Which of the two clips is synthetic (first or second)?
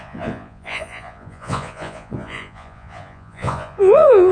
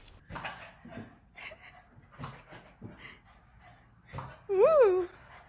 first